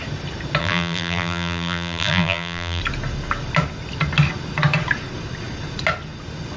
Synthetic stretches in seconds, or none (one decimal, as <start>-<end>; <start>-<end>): 0.6-2.8